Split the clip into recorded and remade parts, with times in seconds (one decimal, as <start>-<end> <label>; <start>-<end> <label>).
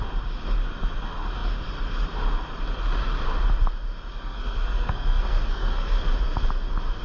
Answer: 0.0-4.1 recorded; 4.1-6.0 remade; 6.0-7.0 recorded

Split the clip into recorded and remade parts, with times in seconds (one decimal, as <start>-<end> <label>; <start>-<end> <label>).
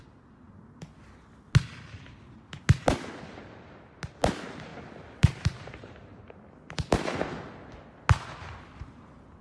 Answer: 0.0-4.7 recorded; 4.7-7.4 remade; 7.4-9.4 recorded